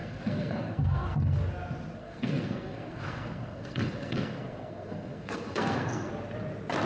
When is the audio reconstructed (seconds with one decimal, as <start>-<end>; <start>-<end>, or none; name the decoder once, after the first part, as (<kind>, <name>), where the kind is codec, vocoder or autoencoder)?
0.0-1.4 (codec, SNAC); 2.0-6.1

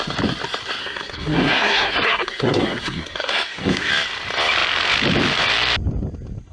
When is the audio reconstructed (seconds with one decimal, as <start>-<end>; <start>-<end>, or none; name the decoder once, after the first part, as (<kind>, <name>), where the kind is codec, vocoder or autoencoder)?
0.8-3.9 (codec, SNAC)

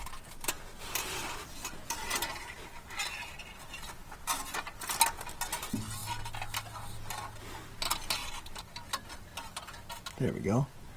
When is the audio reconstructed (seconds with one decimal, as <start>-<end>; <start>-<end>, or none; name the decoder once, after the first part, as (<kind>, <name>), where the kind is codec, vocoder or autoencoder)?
none

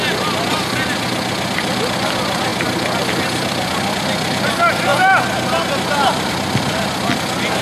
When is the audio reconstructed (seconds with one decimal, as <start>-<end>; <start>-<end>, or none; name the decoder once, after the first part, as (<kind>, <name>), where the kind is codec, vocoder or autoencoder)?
none

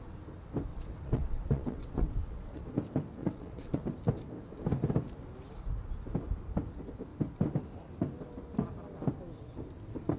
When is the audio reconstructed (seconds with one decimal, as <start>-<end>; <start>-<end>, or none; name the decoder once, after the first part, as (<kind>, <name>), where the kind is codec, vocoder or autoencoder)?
0.7-2.6 (vocoder, WaveNeXt); 3.2-3.8

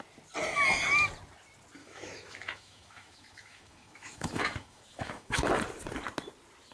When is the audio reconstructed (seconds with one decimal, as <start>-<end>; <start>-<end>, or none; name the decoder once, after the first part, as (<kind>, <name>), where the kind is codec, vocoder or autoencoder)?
1.8-5.5 (autoencoder, DAC-VAE)

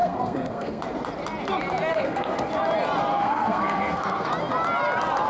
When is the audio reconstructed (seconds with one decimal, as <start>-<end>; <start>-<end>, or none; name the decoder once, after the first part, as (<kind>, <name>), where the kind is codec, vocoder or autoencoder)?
0.0-0.8 (codec, SNAC); 1.9-2.5; 3.1-4.3

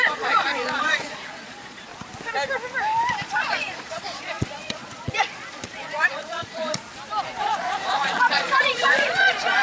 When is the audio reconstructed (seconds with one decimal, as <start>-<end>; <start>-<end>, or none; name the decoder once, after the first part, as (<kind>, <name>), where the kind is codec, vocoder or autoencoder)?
0.0-1.9 (vocoder, Vocos); 3.1-6.8; 7.4-9.6